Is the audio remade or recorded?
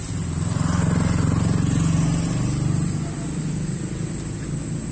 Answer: recorded